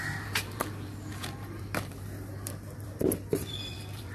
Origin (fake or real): fake